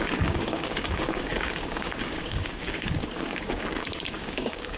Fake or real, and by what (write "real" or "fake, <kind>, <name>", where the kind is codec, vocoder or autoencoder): fake, codec, DAC